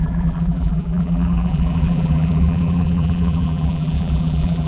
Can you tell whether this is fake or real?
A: fake